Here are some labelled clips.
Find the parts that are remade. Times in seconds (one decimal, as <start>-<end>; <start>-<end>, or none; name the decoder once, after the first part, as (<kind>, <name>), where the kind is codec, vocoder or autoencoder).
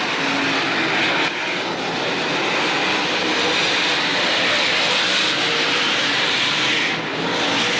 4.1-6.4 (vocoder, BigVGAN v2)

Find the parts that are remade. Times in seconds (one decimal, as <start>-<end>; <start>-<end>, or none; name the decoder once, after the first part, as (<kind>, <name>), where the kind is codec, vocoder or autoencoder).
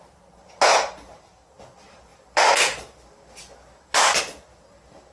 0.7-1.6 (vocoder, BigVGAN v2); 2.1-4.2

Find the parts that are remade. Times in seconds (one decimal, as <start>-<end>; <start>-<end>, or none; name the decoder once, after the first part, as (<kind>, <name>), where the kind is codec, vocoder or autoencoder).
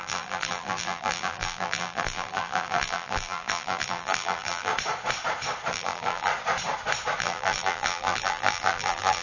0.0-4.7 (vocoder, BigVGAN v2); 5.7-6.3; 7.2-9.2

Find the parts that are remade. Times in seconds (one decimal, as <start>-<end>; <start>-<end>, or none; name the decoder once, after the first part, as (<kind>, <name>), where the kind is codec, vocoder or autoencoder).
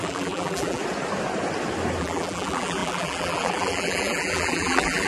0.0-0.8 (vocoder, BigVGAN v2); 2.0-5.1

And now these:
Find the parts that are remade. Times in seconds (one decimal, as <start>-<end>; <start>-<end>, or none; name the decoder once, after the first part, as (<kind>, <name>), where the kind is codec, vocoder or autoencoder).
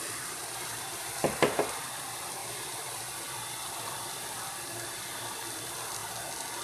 0.0-6.0 (vocoder, BigVGAN v2)